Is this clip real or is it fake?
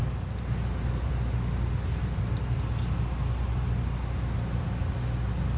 real